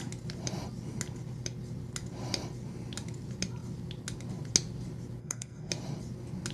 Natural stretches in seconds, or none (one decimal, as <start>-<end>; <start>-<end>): 0.0-5.2; 5.7-6.5